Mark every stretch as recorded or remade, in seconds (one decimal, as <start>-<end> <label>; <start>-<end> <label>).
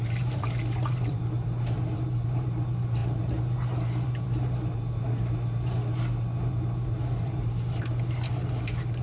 0.0-9.0 remade